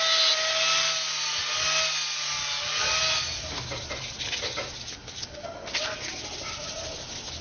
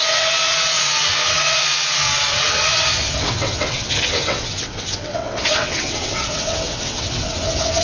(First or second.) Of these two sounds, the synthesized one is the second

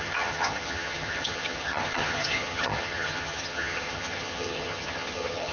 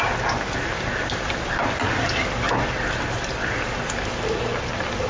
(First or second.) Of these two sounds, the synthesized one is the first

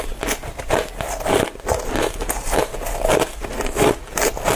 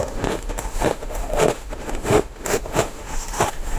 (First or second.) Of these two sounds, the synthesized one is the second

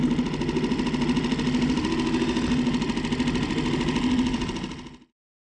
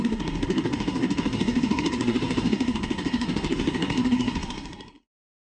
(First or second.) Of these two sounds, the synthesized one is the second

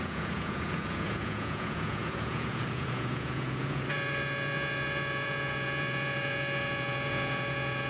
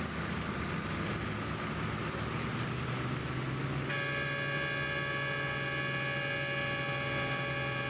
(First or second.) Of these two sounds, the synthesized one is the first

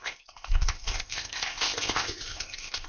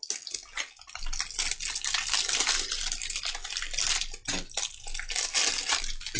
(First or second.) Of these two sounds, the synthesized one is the first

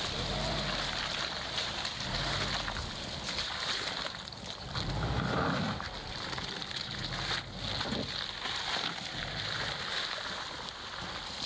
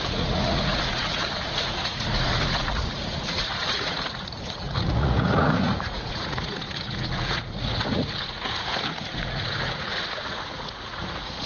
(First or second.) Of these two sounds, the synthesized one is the second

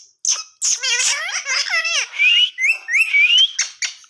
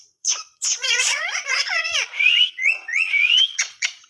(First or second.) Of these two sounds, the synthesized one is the second